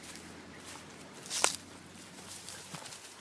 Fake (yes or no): no